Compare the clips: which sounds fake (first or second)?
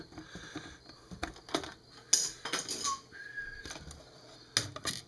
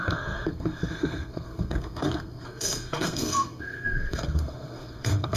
second